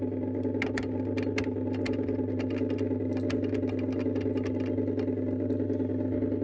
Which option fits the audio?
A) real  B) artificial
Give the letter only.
A